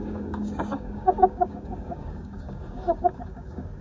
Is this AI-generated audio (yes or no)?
yes